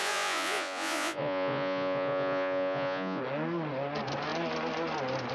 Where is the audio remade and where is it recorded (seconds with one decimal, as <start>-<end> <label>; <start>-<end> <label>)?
0.0-3.2 remade; 3.2-5.3 recorded

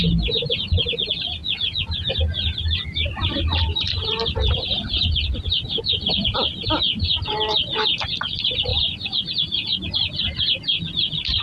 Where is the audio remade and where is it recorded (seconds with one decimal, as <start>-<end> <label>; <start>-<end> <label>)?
0.0-8.7 recorded; 8.7-9.2 remade; 9.2-11.4 recorded

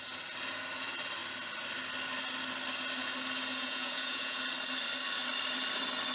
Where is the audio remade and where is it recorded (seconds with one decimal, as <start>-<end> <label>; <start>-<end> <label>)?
0.0-3.5 recorded; 3.5-4.4 remade; 4.4-6.1 recorded

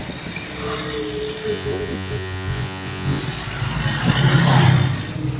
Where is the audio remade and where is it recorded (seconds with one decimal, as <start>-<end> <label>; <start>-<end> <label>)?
0.0-1.5 recorded; 1.5-3.2 remade; 3.2-5.4 recorded

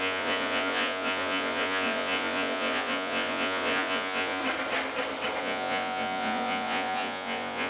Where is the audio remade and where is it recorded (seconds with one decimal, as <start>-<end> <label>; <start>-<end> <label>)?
0.0-4.4 remade; 4.4-5.4 recorded; 5.4-7.7 remade

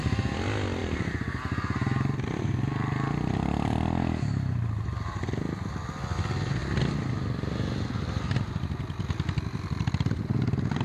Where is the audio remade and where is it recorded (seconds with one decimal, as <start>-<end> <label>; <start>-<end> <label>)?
0.0-10.8 recorded

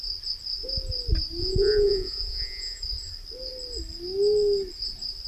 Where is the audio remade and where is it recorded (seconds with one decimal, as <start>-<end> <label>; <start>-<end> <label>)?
0.0-1.4 recorded; 1.4-2.8 remade; 2.8-5.3 recorded